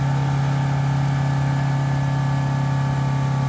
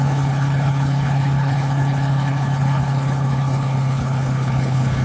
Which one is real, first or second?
first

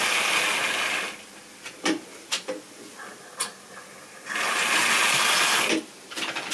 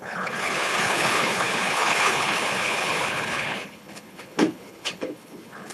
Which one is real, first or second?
first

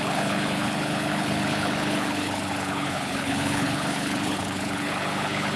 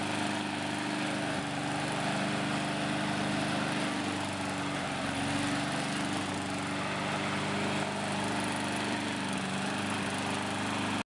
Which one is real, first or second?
second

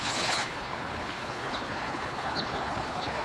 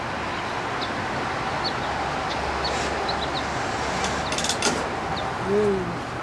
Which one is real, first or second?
second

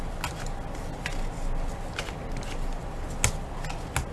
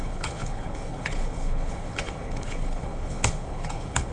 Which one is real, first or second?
first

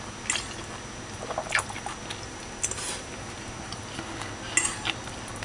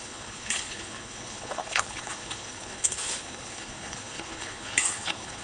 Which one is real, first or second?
first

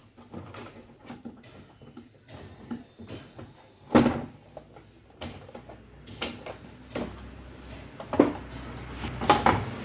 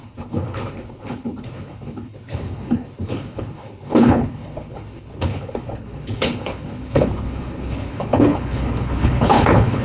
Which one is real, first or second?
first